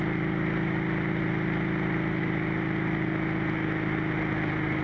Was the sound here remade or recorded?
recorded